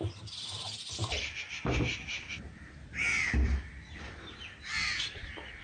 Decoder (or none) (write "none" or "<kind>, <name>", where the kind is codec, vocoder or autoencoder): vocoder, BigVGAN v2